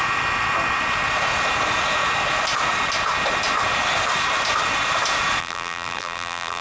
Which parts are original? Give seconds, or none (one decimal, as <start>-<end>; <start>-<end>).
0.0-5.4